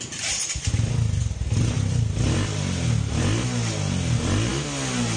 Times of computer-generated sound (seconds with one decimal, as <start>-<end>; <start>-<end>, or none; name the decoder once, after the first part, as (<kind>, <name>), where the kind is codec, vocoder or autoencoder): none